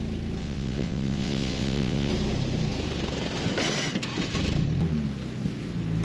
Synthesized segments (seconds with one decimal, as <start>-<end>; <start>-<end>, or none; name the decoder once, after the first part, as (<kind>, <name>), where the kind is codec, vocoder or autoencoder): 0.4-2.1 (vocoder, WaveNeXt)